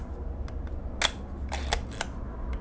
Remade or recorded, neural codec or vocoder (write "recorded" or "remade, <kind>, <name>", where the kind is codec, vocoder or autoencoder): recorded